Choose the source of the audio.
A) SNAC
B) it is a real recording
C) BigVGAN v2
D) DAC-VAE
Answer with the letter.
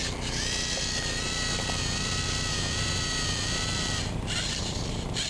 C